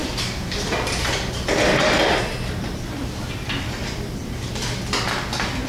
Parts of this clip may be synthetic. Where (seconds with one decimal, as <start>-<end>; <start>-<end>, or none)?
none